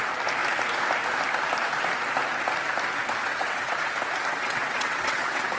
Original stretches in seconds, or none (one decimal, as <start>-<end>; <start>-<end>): 0.0-3.3; 3.9-4.3